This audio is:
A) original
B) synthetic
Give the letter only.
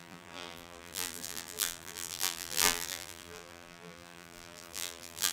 B